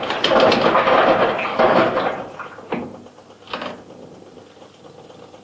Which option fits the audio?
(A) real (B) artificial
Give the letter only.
B